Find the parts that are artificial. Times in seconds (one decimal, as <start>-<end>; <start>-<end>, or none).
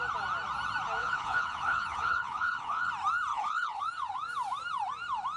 1.0-2.9; 3.3-3.8